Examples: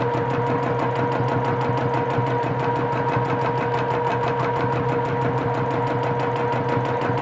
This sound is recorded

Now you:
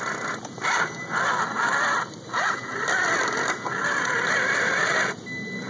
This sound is recorded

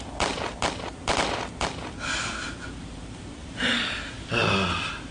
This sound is recorded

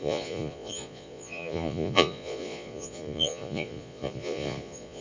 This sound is remade